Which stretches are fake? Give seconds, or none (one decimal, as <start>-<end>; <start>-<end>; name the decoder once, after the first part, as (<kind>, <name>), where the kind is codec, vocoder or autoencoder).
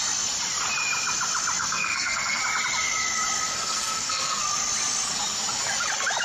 1.6-2.4 (codec, SNAC); 3.5-4.4